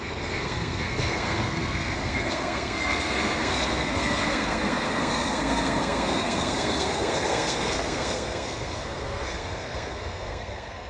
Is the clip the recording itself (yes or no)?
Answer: no